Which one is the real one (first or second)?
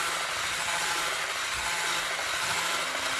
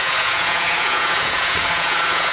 first